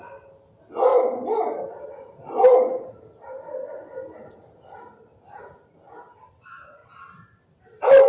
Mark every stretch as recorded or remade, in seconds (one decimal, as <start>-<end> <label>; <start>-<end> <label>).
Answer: 0.0-8.1 recorded